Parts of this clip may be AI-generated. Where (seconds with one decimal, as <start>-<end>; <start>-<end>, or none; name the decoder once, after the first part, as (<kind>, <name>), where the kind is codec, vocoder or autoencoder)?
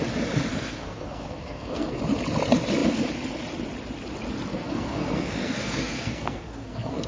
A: 0.5-2.0 (codec, SNAC); 4.5-7.1